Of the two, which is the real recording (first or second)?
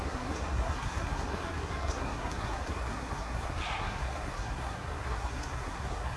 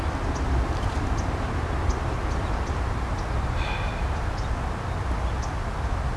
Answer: second